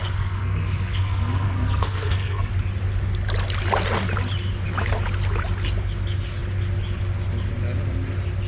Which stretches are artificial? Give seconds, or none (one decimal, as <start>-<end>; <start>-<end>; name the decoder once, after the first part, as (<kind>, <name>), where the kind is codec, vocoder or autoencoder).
0.0-2.5 (codec, SNAC)